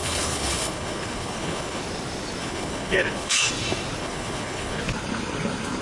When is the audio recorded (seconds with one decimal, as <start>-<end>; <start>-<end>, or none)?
1.8-2.4; 3.5-4.0; 4.8-5.8